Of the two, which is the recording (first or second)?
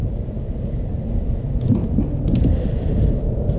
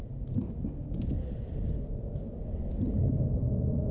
second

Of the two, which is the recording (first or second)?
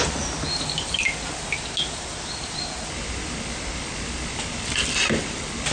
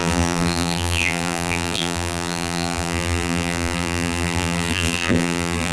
first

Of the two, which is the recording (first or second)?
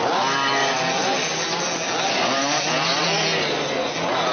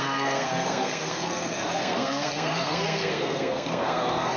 first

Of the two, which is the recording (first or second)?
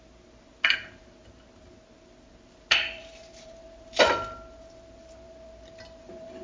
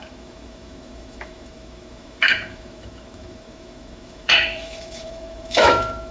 first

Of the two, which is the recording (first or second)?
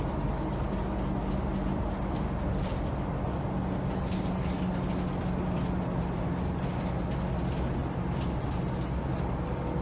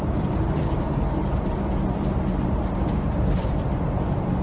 first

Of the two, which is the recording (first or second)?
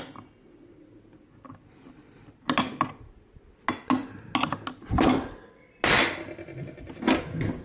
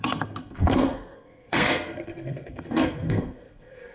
first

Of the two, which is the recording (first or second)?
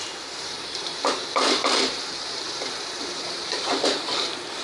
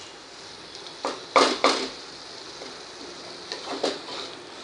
second